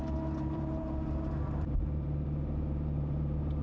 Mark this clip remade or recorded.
remade